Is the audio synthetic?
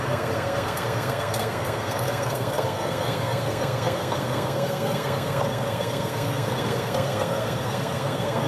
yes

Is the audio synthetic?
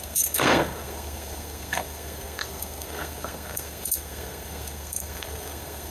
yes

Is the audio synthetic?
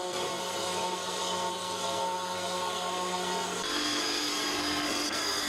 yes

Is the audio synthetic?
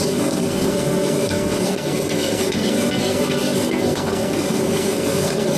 yes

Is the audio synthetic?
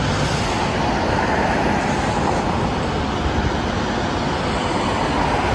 no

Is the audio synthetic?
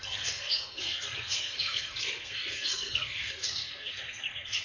yes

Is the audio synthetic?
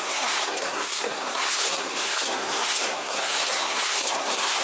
yes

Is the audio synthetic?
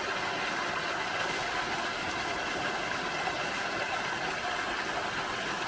no